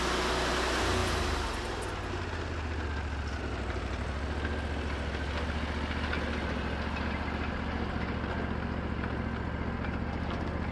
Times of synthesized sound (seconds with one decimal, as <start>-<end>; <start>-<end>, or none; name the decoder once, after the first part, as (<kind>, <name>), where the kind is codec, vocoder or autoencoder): none

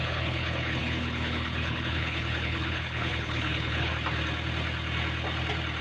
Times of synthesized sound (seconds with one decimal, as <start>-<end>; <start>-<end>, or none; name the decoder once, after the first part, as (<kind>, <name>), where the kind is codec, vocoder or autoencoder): 0.0-3.9 (codec, HILCodec)

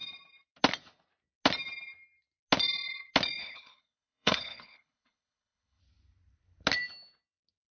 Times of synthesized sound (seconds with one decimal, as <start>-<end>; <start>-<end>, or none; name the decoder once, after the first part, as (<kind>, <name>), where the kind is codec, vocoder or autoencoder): 3.4-5.8 (codec, HILCodec)

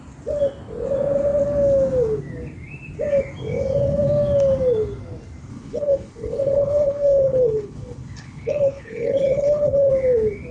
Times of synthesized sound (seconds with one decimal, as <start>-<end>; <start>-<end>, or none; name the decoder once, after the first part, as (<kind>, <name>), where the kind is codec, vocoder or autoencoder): 5.5-9.9 (codec, HILCodec)

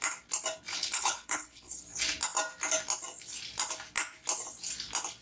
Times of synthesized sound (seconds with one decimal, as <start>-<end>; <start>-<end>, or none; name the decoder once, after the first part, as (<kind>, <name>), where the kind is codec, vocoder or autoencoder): 0.7-1.8 (codec, HILCodec)

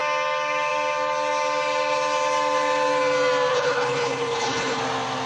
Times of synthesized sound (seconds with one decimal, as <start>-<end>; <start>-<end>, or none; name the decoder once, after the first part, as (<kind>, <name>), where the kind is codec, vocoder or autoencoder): 3.5-4.8 (codec, HILCodec)

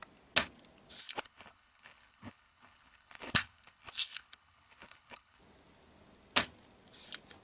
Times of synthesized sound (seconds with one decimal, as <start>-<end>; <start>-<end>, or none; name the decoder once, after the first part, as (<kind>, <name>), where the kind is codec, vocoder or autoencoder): 1.0-5.4 (codec, HILCodec)